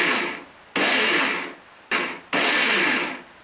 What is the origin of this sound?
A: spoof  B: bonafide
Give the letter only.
B